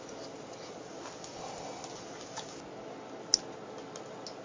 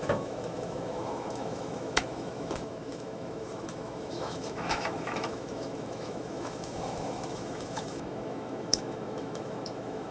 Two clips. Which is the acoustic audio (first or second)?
first